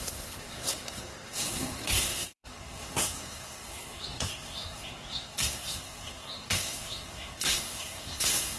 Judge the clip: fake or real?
fake